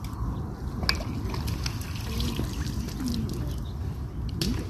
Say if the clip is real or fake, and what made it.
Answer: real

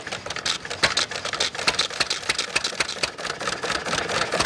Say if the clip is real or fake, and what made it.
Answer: real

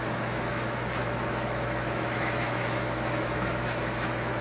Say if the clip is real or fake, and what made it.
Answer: fake, autoencoder, DAC-VAE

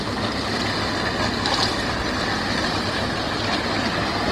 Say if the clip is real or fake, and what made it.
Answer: real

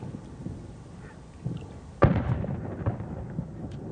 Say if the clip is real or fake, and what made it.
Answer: real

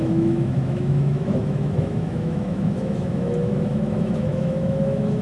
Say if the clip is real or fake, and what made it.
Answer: fake, autoencoder, DAC-VAE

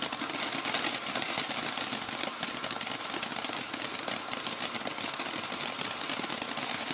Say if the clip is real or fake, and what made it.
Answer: real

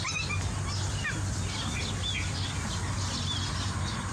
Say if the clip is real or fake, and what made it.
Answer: real